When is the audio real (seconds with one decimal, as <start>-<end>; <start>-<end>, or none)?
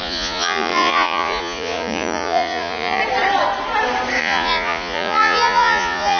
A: 3.0-4.2